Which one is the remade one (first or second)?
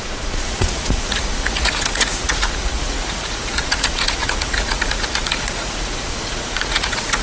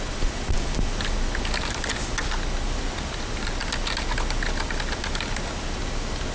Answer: first